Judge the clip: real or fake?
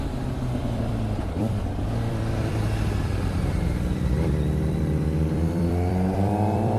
fake